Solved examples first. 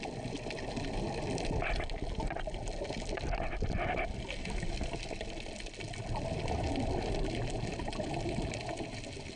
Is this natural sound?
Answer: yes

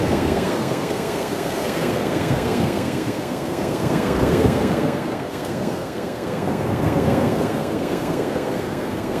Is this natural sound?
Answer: no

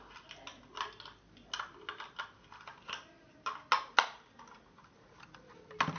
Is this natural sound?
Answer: yes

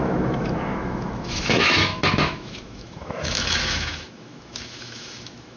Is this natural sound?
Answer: no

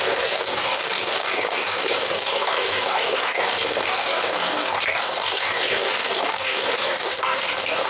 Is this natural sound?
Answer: no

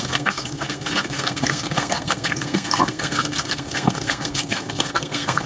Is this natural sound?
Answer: no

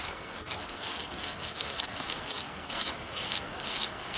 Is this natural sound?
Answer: no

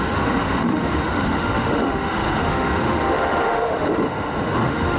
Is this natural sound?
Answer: no